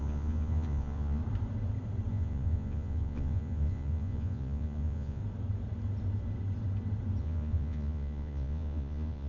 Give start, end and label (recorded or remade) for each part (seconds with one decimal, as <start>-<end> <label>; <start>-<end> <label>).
0.0-1.2 remade; 1.2-2.1 recorded; 2.1-5.2 remade; 5.2-7.2 recorded; 7.2-9.3 remade